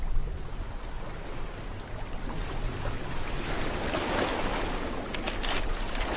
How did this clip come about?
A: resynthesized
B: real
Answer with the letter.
B